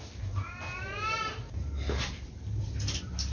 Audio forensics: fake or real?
real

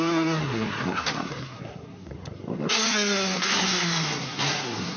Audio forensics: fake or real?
fake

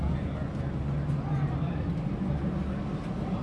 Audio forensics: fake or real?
real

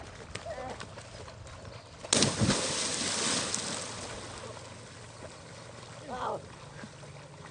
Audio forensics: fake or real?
real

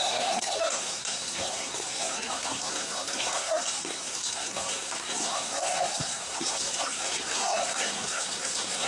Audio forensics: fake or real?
fake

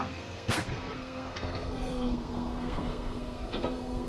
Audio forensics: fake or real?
fake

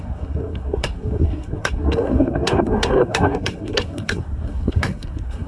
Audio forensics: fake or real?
fake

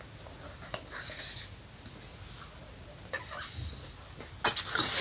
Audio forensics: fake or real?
real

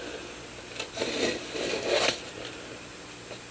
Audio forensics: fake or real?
real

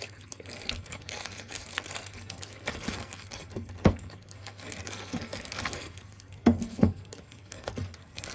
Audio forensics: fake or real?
fake